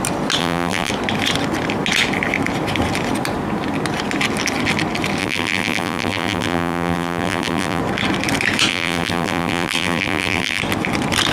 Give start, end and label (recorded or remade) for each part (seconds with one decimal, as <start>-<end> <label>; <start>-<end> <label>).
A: 0.0-0.4 recorded; 0.4-0.9 remade; 0.9-5.2 recorded; 5.2-7.8 remade; 7.8-8.7 recorded; 8.7-10.6 remade; 10.6-11.3 recorded